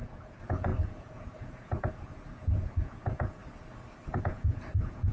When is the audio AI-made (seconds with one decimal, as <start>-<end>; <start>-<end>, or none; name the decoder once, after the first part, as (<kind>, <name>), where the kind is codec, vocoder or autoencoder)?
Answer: 0.0-3.4 (vocoder, Vocos); 4.2-5.1